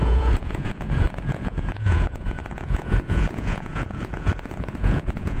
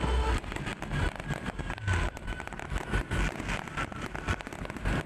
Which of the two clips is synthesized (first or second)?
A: first